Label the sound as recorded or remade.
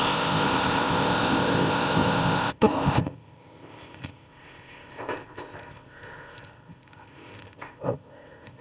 remade